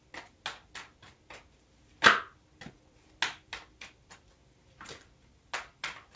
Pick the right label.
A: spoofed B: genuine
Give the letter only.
B